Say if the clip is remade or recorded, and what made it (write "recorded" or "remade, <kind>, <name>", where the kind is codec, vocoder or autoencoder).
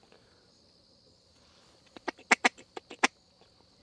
recorded